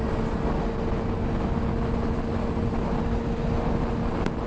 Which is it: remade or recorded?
recorded